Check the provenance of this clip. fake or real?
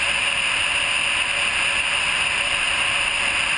real